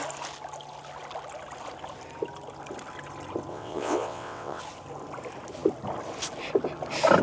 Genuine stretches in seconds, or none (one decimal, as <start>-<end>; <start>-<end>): 0.0-3.5; 4.6-7.2